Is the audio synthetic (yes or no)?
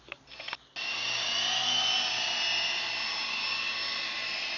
no